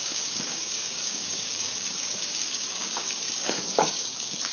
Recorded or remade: remade